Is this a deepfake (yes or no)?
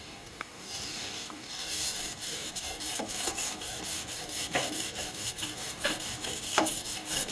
yes